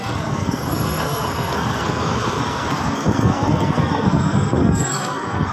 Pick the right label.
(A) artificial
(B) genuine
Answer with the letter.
A